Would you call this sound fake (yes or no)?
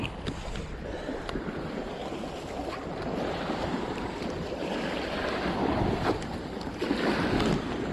no